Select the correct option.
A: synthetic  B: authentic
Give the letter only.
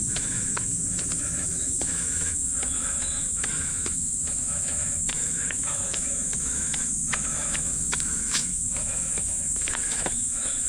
A